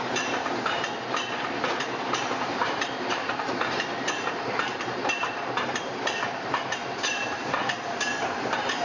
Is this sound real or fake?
fake